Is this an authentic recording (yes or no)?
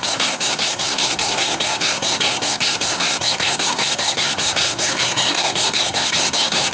no